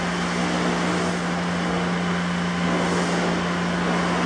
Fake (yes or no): no